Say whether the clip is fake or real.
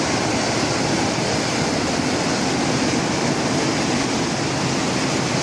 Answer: real